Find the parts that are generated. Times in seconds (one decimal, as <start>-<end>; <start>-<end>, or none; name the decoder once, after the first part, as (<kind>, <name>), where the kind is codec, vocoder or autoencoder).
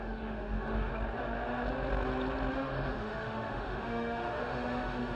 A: 0.0-0.9 (autoencoder, DAC-VAE); 2.5-5.2